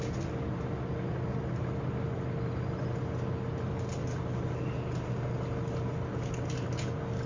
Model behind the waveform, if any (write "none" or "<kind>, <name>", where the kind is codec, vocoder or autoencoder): none